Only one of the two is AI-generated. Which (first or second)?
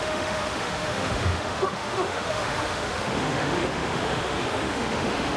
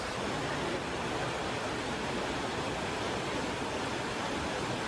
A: first